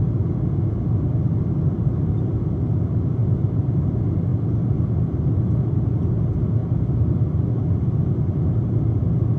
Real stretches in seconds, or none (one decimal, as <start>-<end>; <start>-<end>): 0.0-9.4